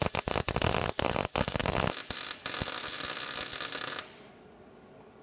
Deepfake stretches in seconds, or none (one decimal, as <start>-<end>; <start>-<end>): none